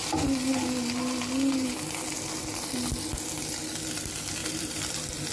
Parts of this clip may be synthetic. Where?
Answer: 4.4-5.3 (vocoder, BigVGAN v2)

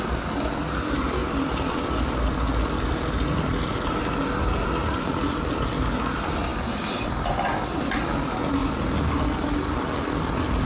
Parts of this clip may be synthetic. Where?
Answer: 1.2-4.0 (vocoder, BigVGAN v2); 4.8-5.7; 6.5-7.3

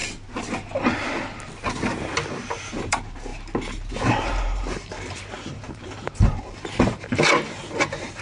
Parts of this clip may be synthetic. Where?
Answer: 2.7-3.3 (vocoder, BigVGAN v2); 3.9-8.2